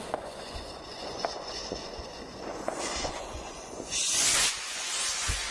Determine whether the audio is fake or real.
fake